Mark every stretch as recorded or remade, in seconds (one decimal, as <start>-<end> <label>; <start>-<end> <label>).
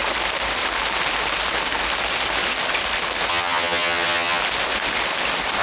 0.0-3.3 recorded; 3.3-4.4 remade; 4.4-5.6 recorded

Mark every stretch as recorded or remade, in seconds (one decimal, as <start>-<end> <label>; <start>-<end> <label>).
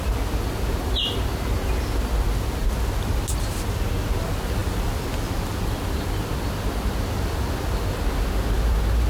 0.0-9.1 recorded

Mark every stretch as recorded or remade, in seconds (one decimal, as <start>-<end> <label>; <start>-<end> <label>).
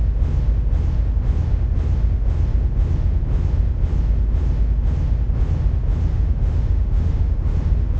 0.0-6.1 recorded; 6.1-7.5 remade; 7.5-8.0 recorded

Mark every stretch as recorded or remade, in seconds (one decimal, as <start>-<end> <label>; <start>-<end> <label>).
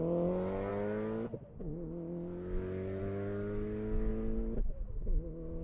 0.0-5.6 recorded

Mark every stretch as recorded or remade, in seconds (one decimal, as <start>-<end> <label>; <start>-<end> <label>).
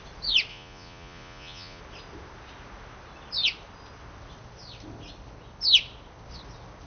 0.0-0.5 recorded; 0.5-1.8 remade; 1.8-6.9 recorded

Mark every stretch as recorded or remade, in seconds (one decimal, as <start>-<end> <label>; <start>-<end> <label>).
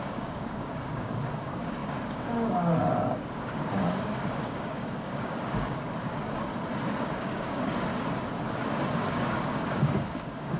0.0-6.5 remade; 6.5-7.0 recorded; 7.0-7.9 remade; 7.9-9.0 recorded; 9.0-10.6 remade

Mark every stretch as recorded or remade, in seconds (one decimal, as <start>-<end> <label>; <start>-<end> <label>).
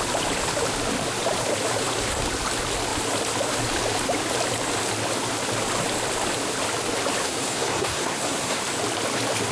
0.0-7.2 recorded; 7.2-8.6 remade; 8.6-9.5 recorded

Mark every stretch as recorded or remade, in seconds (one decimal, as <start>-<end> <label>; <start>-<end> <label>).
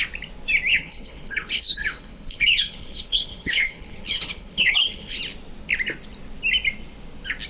0.0-0.7 recorded; 0.7-5.2 remade; 5.2-7.5 recorded